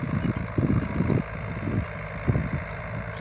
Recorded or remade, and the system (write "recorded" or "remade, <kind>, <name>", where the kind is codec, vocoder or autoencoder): recorded